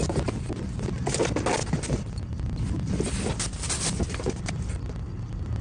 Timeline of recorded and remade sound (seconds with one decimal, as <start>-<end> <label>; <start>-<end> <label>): 0.0-5.6 recorded